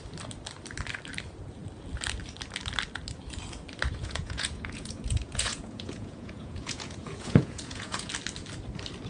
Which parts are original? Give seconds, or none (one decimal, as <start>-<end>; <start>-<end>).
0.0-4.0; 8.1-9.1